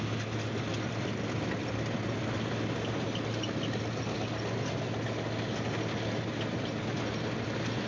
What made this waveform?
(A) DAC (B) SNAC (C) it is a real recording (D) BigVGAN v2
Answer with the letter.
C